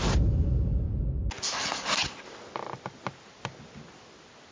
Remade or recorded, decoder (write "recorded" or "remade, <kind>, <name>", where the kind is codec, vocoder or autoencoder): recorded